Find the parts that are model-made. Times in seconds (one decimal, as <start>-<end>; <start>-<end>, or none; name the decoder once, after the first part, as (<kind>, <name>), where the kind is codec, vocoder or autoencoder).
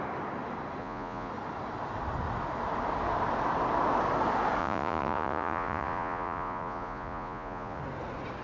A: 0.8-1.3 (vocoder, Vocos); 4.6-7.8